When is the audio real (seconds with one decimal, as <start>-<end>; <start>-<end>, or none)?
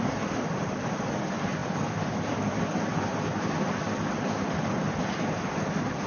0.0-6.1